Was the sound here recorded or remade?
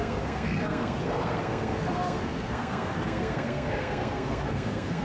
remade